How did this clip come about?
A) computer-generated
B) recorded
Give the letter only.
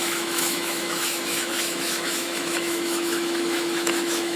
A